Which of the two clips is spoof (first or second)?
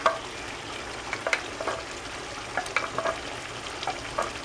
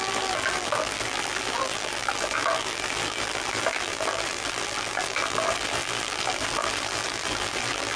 second